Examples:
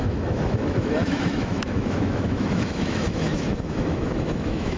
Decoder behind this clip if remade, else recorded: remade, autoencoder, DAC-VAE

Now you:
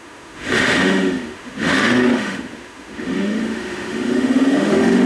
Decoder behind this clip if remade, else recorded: remade, autoencoder, DAC-VAE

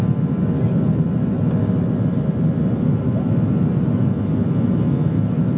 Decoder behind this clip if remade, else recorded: recorded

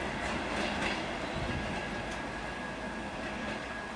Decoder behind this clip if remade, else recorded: recorded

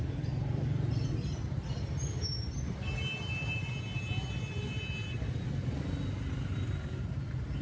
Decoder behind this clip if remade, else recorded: recorded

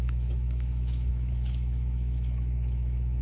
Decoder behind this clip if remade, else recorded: remade, autoencoder, DAC-VAE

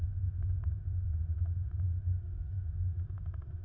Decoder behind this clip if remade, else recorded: remade, autoencoder, DAC-VAE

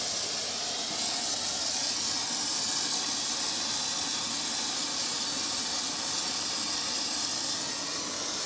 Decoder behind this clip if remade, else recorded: recorded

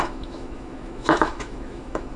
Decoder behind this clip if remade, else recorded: remade, autoencoder, DAC-VAE